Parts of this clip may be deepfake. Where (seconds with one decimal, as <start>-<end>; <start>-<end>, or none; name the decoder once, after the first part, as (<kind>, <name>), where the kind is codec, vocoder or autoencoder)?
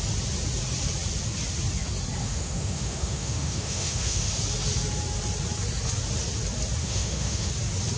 2.2-4.3 (autoencoder, DAC-VAE); 6.8-7.5